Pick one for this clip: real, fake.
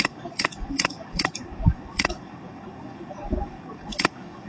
fake